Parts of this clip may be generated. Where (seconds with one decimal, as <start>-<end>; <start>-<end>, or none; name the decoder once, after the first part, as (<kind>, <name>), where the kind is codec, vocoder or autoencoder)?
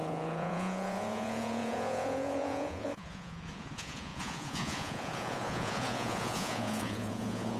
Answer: 0.0-7.6 (vocoder, Vocos)